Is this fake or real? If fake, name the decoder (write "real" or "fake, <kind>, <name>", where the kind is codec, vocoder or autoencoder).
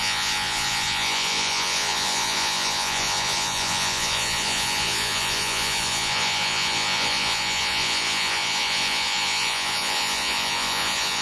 fake, vocoder, Vocos